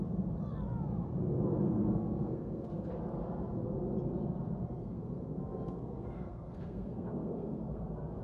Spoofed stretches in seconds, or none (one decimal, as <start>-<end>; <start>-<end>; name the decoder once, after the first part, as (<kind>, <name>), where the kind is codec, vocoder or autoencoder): 1.5-2.9 (codec, SNAC); 4.8-8.2